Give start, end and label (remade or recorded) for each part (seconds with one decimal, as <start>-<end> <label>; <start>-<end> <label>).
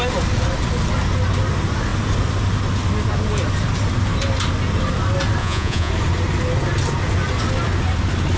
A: 0.0-5.4 recorded; 5.4-5.9 remade; 5.9-8.4 recorded